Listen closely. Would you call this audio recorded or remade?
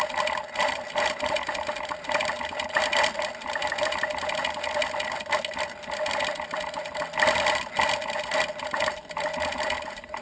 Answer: recorded